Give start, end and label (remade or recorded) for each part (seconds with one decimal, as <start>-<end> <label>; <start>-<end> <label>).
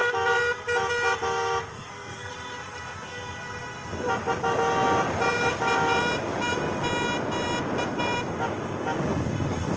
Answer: 0.0-1.7 recorded; 1.7-2.3 remade; 2.3-9.8 recorded